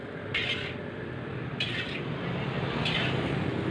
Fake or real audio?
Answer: real